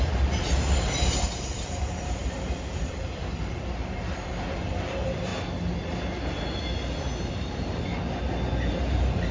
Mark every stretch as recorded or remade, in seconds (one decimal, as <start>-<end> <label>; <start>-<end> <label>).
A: 0.0-5.3 remade; 5.3-7.2 recorded; 7.2-7.9 remade; 7.9-8.7 recorded; 8.7-9.3 remade